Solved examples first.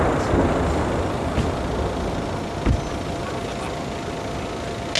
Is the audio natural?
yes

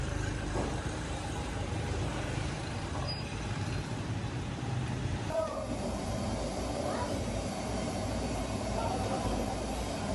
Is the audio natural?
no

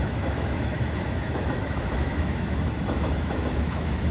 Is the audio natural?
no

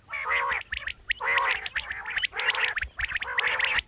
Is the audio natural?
yes